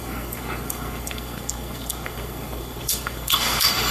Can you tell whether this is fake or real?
fake